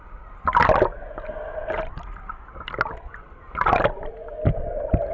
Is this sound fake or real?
real